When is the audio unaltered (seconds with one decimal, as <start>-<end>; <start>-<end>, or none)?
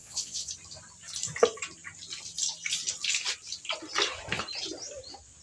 0.5-5.4